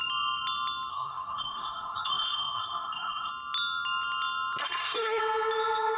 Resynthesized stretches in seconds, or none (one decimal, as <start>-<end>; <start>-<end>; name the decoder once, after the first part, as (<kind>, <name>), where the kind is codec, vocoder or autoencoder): 0.9-3.3 (codec, SNAC); 4.6-5.2